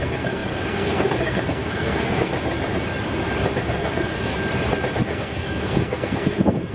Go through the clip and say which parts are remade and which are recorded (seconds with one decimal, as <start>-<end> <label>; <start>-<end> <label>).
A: 0.0-2.3 remade; 2.3-3.6 recorded; 3.6-4.3 remade; 4.3-5.0 recorded; 5.0-6.7 remade